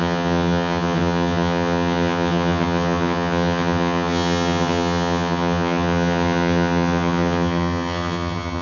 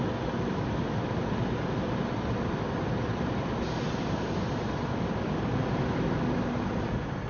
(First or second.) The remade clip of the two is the first